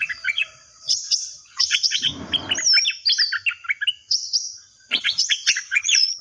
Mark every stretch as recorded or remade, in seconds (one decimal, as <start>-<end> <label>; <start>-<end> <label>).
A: 0.0-2.1 remade; 2.1-4.7 recorded; 4.7-6.2 remade